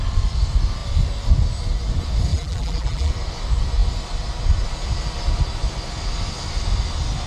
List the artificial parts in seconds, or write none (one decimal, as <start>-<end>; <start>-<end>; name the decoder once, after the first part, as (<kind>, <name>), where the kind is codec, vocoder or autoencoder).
2.3-3.1 (vocoder, BigVGAN v2)